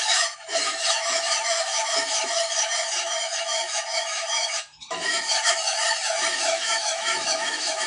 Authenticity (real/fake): fake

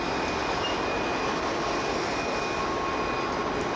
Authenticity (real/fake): real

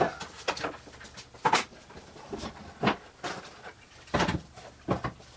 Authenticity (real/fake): real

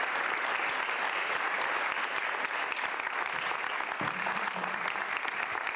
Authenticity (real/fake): real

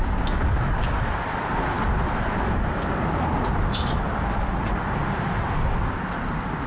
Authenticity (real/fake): real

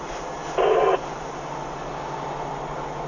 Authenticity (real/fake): real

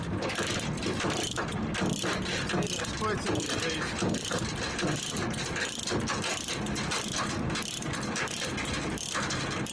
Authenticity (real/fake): real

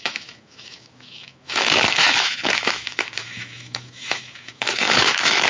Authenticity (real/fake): fake